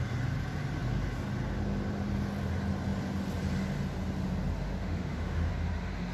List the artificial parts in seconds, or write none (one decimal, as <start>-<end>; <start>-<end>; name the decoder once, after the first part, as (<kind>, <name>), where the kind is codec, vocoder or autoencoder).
4.8-5.5 (autoencoder, DAC-VAE)